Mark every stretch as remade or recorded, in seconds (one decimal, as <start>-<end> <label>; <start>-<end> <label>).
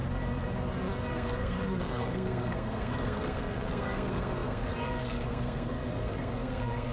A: 0.0-1.1 recorded; 1.1-6.9 remade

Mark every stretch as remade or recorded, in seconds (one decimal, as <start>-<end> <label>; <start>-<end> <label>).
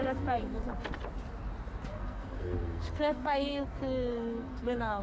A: 0.0-0.7 remade; 0.7-1.9 recorded; 1.9-5.0 remade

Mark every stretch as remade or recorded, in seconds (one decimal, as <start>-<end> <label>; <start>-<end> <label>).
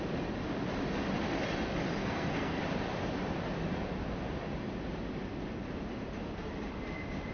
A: 0.0-2.0 recorded; 2.0-2.6 remade; 2.6-7.3 recorded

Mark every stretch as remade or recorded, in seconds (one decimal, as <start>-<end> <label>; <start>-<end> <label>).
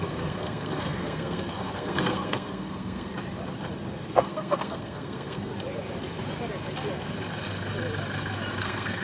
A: 0.0-3.1 remade; 3.1-4.1 recorded; 4.1-5.5 remade; 5.5-8.6 recorded; 8.6-9.0 remade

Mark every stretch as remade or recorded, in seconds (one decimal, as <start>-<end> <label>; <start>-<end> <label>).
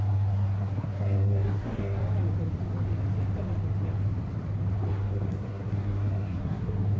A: 0.0-2.0 remade; 2.0-4.9 recorded; 4.9-7.0 remade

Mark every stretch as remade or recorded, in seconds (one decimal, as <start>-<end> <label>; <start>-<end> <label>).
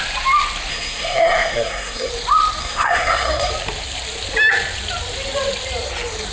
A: 0.0-0.7 recorded; 0.7-2.1 remade; 2.1-2.6 recorded; 2.6-3.5 remade; 3.5-6.3 recorded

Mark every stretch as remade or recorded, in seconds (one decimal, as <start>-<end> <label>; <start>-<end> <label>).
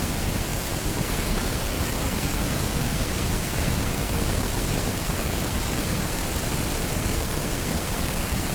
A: 0.0-6.2 remade; 6.2-6.9 recorded; 6.9-8.5 remade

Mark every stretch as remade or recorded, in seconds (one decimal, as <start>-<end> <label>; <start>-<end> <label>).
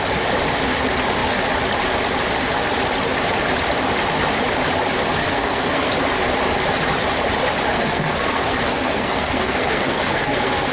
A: 0.0-5.2 recorded; 5.2-5.9 remade; 5.9-7.7 recorded; 7.7-10.7 remade